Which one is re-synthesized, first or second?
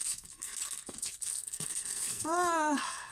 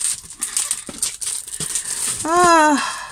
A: first